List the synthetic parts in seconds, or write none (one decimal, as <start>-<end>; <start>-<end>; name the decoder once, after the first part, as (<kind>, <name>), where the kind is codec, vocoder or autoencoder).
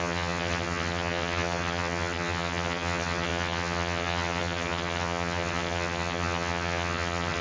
0.0-7.4 (vocoder, HiFi-GAN)